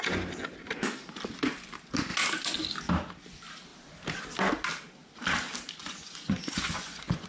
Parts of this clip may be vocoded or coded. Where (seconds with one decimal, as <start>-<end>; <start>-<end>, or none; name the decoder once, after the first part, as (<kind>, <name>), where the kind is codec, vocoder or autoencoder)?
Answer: 5.8-7.3 (vocoder, Vocos)